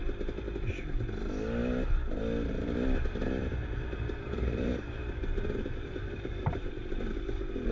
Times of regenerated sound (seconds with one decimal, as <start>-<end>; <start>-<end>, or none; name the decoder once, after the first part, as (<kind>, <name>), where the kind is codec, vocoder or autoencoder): 3.5-6.8 (vocoder, BigVGAN v2)